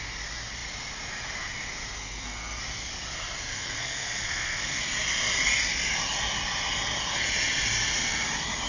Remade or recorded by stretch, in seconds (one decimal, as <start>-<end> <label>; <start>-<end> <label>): 0.0-2.0 recorded; 2.0-2.6 remade; 2.6-3.5 recorded; 3.5-4.8 remade; 4.8-8.7 recorded